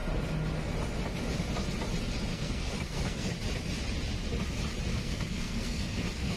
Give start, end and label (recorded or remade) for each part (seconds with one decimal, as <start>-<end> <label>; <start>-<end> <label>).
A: 0.0-2.3 recorded; 2.3-3.3 remade; 3.3-4.9 recorded; 4.9-6.4 remade